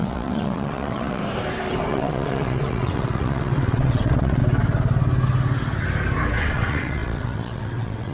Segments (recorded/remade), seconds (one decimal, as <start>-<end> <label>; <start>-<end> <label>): 0.0-1.2 remade; 1.2-1.9 recorded; 1.9-4.4 remade; 4.4-6.4 recorded; 6.4-8.1 remade